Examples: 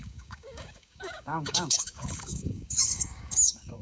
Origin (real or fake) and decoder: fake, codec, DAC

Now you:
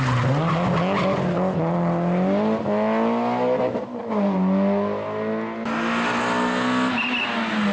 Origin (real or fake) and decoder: real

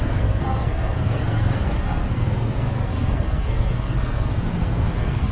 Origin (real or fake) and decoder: fake, codec, SNAC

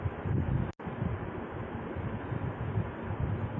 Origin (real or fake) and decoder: real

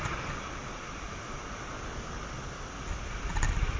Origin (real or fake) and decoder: real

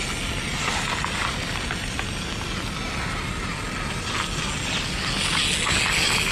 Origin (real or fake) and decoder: real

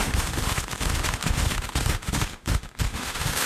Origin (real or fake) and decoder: fake, autoencoder, DAC-VAE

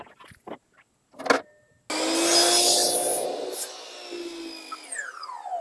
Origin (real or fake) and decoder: real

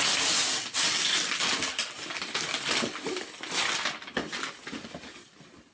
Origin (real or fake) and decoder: real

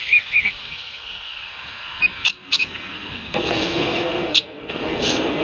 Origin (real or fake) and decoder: fake, codec, SNAC